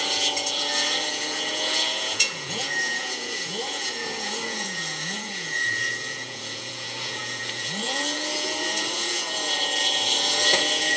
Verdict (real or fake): fake